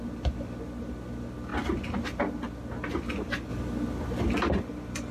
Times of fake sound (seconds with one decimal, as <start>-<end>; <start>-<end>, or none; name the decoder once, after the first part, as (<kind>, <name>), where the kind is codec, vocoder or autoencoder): none